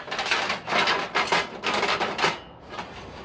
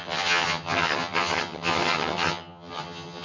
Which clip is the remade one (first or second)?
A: second